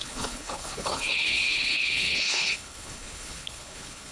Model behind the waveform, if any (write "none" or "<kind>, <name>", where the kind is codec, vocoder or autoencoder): codec, HILCodec